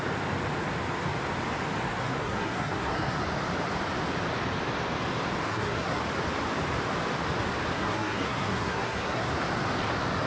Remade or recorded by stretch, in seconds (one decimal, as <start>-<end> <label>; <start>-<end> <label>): 0.0-2.0 recorded; 2.0-3.2 remade; 3.2-5.5 recorded; 5.5-6.0 remade; 6.0-7.7 recorded; 7.7-9.3 remade; 9.3-10.3 recorded